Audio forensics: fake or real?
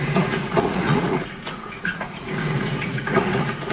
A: fake